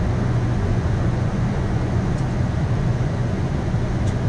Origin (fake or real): fake